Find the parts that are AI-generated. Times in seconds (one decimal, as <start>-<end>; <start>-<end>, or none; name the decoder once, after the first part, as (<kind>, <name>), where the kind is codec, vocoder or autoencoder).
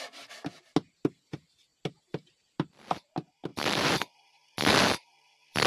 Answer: none